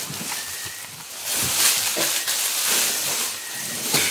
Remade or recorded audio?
recorded